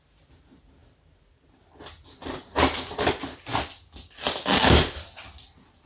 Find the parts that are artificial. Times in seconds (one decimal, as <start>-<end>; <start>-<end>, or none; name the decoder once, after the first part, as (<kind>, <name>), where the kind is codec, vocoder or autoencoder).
0.8-3.1 (vocoder, BigVGAN v2)